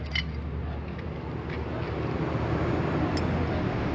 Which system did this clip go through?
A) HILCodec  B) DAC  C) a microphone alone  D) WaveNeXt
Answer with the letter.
C